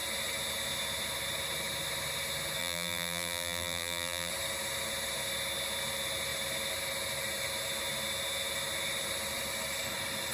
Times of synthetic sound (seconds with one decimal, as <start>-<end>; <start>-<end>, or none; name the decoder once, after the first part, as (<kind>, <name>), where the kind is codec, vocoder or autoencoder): 2.6-4.3 (vocoder, BigVGAN v2)